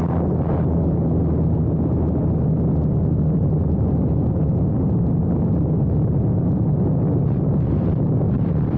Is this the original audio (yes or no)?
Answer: yes